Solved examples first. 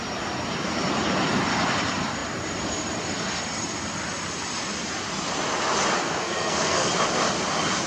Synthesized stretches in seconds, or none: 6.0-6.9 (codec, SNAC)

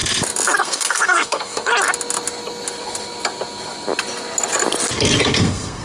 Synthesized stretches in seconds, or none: 0.6-1.7 (codec, SNAC); 5.2-5.8

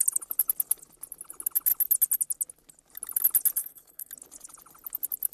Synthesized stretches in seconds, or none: 3.6-4.1 (codec, SNAC)